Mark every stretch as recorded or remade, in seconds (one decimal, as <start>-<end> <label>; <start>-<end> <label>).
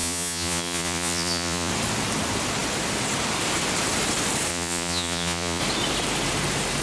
0.0-1.7 remade; 1.7-4.5 recorded; 4.5-5.6 remade; 5.6-6.8 recorded